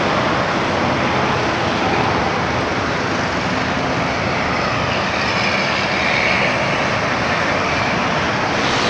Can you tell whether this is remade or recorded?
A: recorded